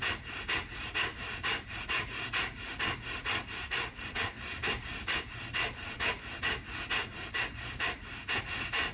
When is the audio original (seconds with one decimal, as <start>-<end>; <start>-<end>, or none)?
none